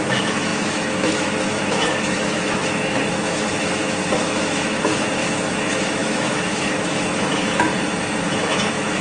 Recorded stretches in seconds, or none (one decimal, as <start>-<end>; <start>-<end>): 7.7-8.2